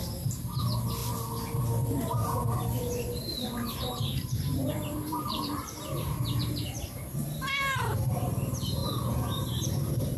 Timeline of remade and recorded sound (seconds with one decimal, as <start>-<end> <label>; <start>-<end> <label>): 0.0-4.1 recorded; 4.1-8.3 remade; 8.3-8.8 recorded; 8.8-10.2 remade